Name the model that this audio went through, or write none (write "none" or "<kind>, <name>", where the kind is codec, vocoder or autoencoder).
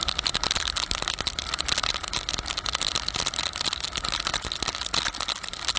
none